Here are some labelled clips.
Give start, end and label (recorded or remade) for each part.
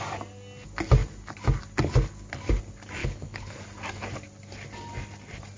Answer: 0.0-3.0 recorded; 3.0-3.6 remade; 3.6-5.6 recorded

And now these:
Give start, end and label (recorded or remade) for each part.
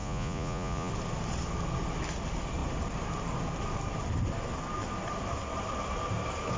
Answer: 0.0-0.9 remade; 0.9-6.6 recorded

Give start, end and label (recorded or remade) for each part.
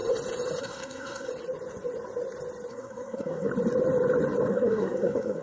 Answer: 0.0-0.6 recorded; 0.6-1.3 remade; 1.3-2.7 recorded; 2.7-3.5 remade; 3.5-4.5 recorded; 4.5-5.4 remade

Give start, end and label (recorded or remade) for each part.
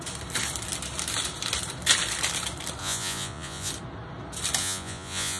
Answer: 0.0-2.8 recorded; 2.8-3.7 remade; 3.7-4.6 recorded; 4.6-5.4 remade